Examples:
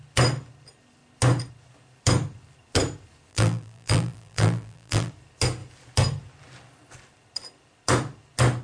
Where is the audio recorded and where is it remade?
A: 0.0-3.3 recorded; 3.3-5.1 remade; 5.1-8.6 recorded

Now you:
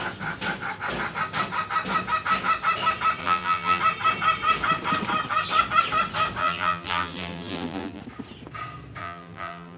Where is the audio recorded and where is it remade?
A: 0.0-3.2 recorded; 3.2-3.8 remade; 3.8-6.4 recorded; 6.4-8.0 remade; 8.0-9.0 recorded; 9.0-9.8 remade

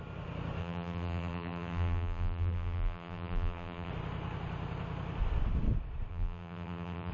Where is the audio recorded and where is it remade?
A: 0.0-0.6 recorded; 0.6-3.9 remade; 3.9-6.1 recorded; 6.1-7.1 remade

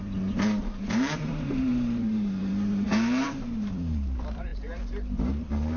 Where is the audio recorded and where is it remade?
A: 0.0-5.8 remade

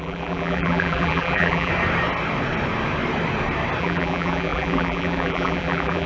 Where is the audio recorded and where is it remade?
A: 0.0-1.7 remade; 1.7-3.8 recorded; 3.8-6.1 remade

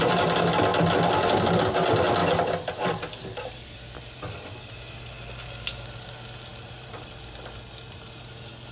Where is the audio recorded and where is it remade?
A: 0.0-2.2 recorded; 2.2-4.7 remade; 4.7-6.5 recorded; 6.5-7.2 remade; 7.2-8.7 recorded